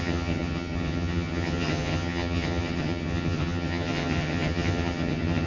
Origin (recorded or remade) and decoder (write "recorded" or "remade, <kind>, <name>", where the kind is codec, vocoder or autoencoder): remade, vocoder, HiFi-GAN